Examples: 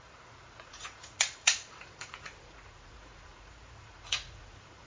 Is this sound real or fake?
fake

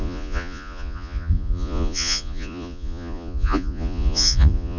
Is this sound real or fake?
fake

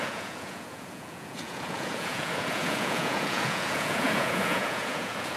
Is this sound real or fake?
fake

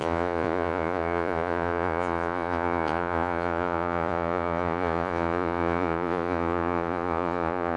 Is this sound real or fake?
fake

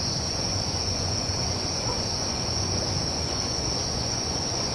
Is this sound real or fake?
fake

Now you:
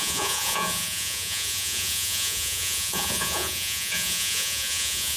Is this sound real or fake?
fake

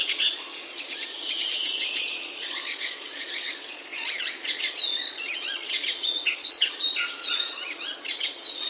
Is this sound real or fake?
fake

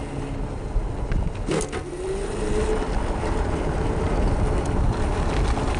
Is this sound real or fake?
real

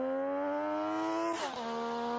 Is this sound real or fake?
real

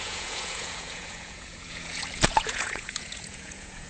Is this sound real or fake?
fake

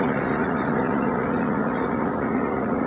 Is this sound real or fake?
fake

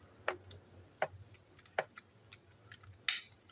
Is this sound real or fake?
real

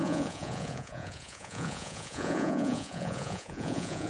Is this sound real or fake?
fake